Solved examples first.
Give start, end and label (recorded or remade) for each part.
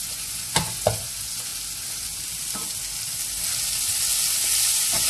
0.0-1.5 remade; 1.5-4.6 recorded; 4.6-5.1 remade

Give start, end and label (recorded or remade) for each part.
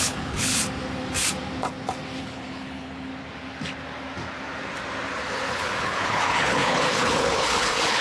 0.0-0.5 remade; 0.5-2.2 recorded; 2.2-3.1 remade; 3.1-5.3 recorded; 5.3-8.0 remade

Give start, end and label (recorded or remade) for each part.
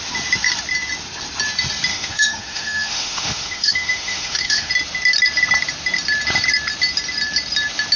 0.0-1.9 recorded; 1.9-4.7 remade; 4.7-8.0 recorded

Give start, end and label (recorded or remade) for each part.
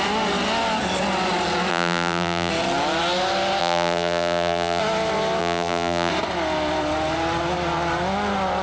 0.0-1.7 recorded; 1.7-2.5 remade; 2.5-3.6 recorded; 3.6-4.8 remade; 4.8-5.4 recorded; 5.4-6.1 remade; 6.1-8.6 recorded